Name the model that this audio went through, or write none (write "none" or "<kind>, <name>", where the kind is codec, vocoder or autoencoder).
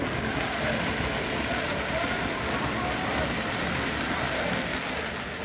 none